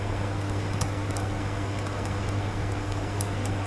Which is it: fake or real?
fake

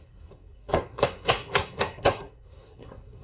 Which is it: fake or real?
fake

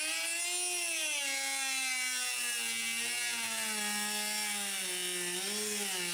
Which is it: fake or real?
real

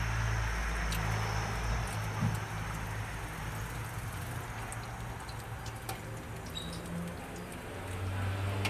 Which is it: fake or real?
real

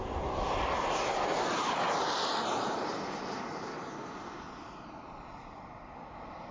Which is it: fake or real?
real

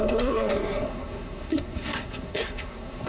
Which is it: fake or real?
fake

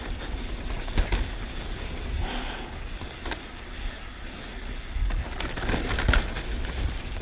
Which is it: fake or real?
real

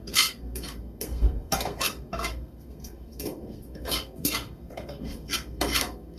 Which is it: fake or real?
fake